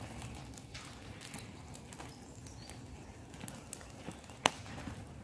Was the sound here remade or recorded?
recorded